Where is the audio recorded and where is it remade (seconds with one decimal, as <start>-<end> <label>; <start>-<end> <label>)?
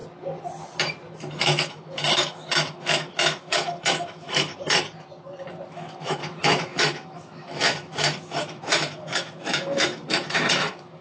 0.0-1.4 recorded; 1.4-4.5 remade; 4.5-5.7 recorded; 5.7-11.0 remade